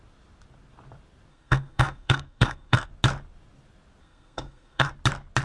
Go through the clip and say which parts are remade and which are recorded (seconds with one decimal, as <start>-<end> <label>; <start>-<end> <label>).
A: 0.0-1.3 recorded; 1.3-2.9 remade; 2.9-4.0 recorded; 4.0-4.9 remade; 4.9-5.4 recorded